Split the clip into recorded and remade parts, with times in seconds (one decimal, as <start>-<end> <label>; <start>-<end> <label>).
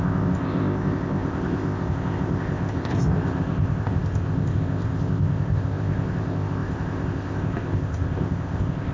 0.0-8.9 remade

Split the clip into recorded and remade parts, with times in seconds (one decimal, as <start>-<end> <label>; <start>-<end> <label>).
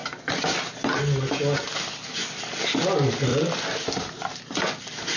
0.0-3.3 recorded; 3.3-4.0 remade; 4.0-5.2 recorded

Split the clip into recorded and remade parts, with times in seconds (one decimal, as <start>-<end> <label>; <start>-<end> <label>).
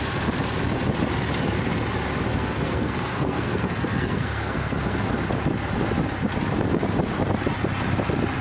0.0-2.3 recorded; 2.3-5.1 remade; 5.1-8.4 recorded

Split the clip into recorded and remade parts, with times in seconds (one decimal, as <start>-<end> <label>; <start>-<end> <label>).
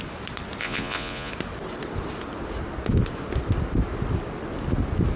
0.0-0.6 recorded; 0.6-1.3 remade; 1.3-5.2 recorded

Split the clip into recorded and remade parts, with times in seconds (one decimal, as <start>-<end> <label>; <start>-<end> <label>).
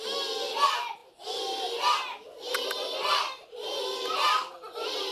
0.0-5.1 recorded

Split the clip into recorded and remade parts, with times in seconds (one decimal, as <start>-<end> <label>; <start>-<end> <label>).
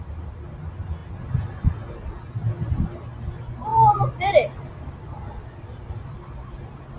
0.0-3.7 recorded; 3.7-5.9 remade; 5.9-7.0 recorded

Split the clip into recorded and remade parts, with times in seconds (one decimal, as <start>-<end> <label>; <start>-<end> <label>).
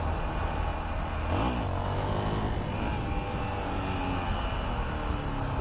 0.0-5.6 recorded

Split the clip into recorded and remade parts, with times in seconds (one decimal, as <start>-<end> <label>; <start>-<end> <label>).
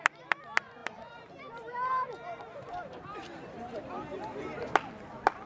0.0-0.8 recorded; 0.8-3.8 remade; 3.8-5.5 recorded